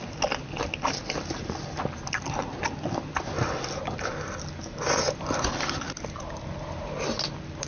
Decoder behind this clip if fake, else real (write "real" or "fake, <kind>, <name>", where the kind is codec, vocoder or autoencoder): real